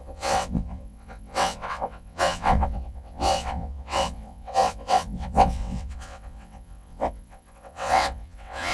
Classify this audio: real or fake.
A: fake